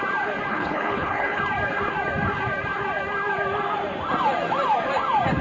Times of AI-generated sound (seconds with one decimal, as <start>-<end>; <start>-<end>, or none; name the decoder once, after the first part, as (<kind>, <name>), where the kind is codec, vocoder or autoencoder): 0.5-1.4 (codec, HILCodec)

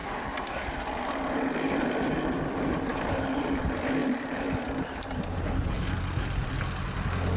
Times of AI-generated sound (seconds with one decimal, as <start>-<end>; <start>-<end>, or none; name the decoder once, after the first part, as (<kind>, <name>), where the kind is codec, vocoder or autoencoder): 2.9-3.6 (vocoder, BigVGAN v2); 4.0-5.9